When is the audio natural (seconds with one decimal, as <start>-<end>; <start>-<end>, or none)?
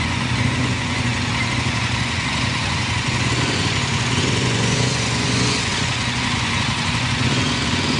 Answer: none